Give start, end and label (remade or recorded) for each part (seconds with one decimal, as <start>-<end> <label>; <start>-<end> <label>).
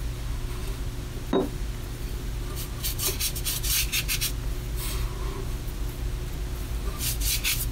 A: 0.0-7.7 recorded